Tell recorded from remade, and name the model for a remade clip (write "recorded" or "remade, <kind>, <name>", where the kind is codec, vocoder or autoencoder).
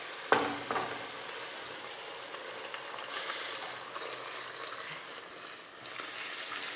recorded